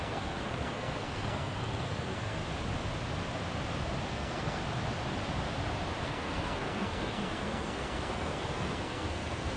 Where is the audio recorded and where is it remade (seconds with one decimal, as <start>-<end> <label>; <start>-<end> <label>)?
0.0-2.4 remade; 2.4-4.1 recorded; 4.1-4.6 remade; 4.6-6.0 recorded; 6.0-9.6 remade